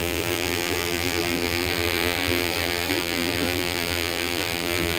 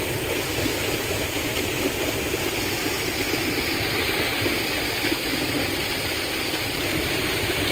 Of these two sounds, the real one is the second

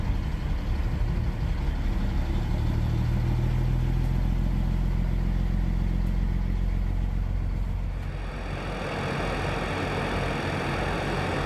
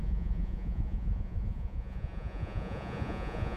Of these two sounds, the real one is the first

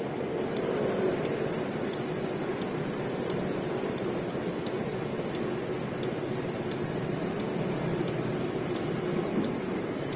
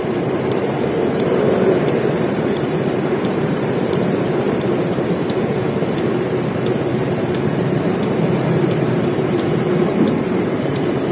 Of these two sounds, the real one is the first